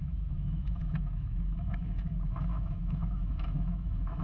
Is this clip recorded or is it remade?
remade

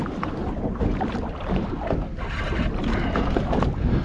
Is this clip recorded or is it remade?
recorded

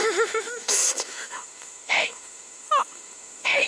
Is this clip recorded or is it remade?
remade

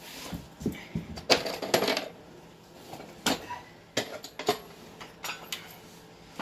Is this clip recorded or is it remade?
recorded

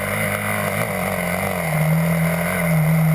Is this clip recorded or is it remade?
recorded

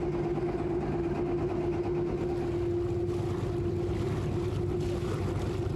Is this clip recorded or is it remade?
recorded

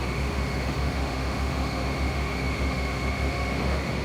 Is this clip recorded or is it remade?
remade